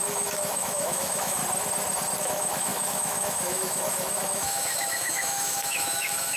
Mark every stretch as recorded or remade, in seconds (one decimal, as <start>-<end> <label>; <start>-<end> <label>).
0.0-1.4 remade; 1.4-2.2 recorded; 2.2-6.4 remade

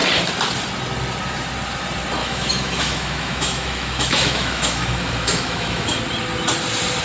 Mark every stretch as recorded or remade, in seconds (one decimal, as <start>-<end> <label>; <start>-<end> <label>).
0.0-2.2 recorded; 2.2-6.0 remade; 6.0-7.0 recorded

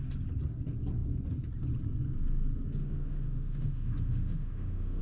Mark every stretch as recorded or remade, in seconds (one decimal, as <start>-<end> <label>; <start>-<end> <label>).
0.0-2.8 recorded; 2.8-5.0 remade